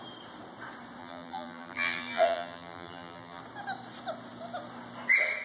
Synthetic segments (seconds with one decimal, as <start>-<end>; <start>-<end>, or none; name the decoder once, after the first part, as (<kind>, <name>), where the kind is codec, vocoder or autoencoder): 1.0-3.4 (vocoder, BigVGAN v2)